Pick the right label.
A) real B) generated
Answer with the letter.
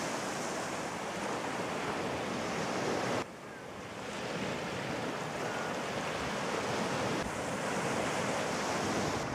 A